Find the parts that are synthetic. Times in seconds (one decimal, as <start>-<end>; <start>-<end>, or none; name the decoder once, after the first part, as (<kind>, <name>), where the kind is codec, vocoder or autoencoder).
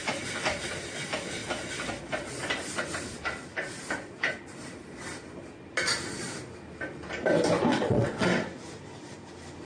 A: 7.7-8.4 (vocoder, WaveNeXt)